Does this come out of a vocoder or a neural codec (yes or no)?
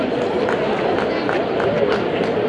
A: no